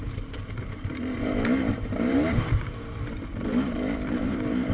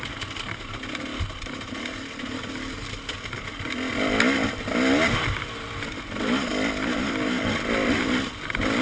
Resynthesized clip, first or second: first